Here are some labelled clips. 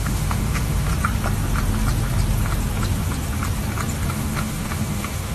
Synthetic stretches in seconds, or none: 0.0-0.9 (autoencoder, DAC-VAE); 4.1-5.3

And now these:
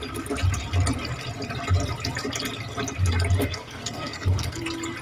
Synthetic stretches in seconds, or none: 3.4-4.6 (codec, SNAC)

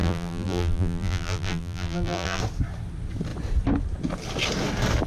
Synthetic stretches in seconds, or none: 0.0-2.4 (vocoder, BigVGAN v2)

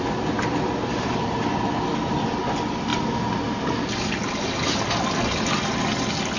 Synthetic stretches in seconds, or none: none

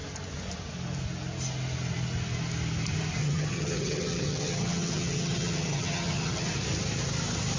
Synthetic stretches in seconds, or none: 3.2-6.5 (vocoder, HiFi-GAN)

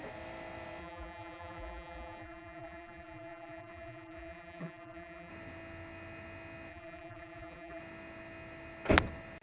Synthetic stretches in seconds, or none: 0.8-5.3 (vocoder, BigVGAN v2); 6.7-7.8